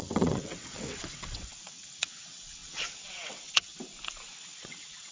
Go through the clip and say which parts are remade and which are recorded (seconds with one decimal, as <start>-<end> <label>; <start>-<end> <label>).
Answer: 0.0-3.7 remade; 3.7-4.3 recorded; 4.3-5.1 remade